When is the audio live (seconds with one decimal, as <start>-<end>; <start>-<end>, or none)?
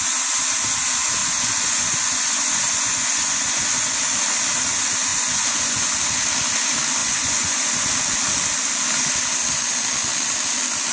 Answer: 0.0-1.2; 3.9-5.1; 5.9-7.0; 7.7-10.9